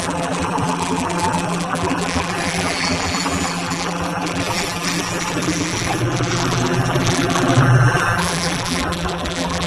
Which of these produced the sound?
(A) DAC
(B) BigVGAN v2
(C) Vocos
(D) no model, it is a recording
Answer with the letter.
B